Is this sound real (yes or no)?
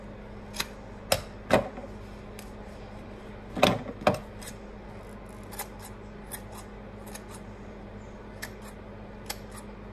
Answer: yes